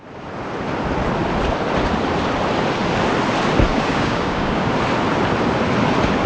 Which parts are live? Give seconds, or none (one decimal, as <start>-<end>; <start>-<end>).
0.0-3.7; 4.7-6.3